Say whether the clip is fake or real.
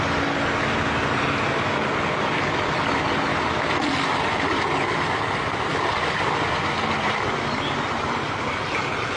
real